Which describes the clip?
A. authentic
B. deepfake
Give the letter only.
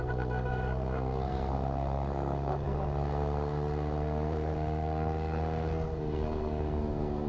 B